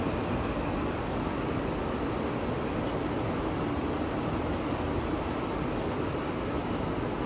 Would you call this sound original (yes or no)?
yes